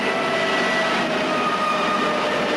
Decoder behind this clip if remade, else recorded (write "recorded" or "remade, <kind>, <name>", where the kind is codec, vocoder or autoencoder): recorded